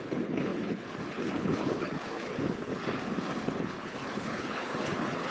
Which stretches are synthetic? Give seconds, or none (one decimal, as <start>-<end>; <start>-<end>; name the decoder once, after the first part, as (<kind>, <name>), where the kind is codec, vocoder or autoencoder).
0.0-2.7 (codec, HILCodec); 3.6-5.3